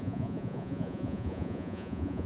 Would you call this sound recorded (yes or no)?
no